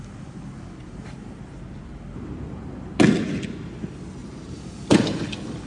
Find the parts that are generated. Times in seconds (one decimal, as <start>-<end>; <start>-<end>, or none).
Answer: 0.8-1.5; 4.2-5.2

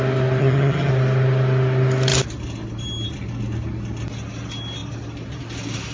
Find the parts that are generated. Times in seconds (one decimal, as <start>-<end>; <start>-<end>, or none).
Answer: 0.4-0.9